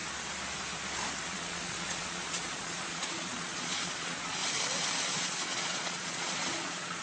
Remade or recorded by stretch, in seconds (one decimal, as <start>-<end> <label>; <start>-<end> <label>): 0.0-1.2 recorded; 1.2-4.4 remade; 4.4-5.1 recorded; 5.1-7.0 remade